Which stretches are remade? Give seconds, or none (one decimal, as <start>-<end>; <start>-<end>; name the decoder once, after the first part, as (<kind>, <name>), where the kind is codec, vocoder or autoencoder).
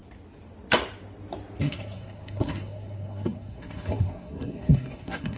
1.6-5.4 (codec, SNAC)